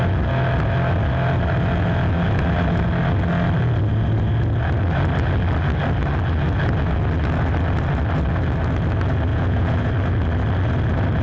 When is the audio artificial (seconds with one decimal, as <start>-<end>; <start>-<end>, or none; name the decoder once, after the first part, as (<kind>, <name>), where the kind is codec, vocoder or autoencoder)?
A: 9.3-9.9 (vocoder, Vocos)